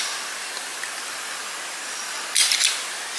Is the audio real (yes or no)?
yes